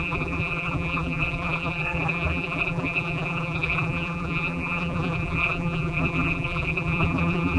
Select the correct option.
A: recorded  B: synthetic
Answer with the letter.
B